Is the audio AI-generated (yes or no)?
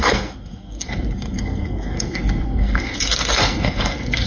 yes